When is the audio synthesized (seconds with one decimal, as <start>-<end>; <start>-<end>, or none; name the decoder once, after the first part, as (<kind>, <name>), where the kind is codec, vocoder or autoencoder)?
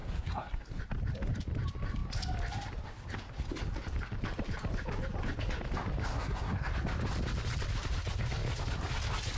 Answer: 0.0-0.8 (codec, SNAC); 6.1-6.7